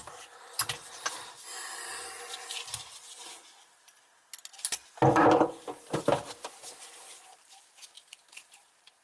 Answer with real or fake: real